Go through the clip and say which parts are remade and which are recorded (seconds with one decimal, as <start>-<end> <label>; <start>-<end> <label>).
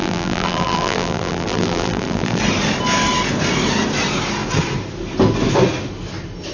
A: 0.0-2.4 remade; 2.4-6.5 recorded